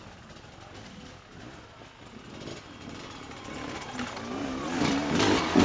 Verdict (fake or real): real